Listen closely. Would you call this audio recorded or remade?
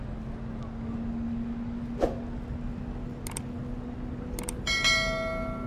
recorded